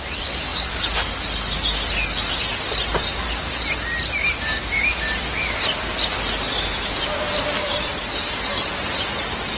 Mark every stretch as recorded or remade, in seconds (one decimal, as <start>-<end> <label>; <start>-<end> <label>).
0.0-9.6 recorded